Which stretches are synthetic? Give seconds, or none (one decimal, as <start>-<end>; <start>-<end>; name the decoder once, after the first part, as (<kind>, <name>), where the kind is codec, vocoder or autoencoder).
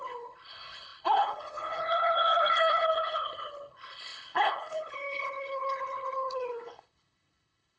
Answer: 0.0-7.8 (codec, HILCodec)